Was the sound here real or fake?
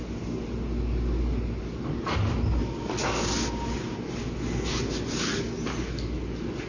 real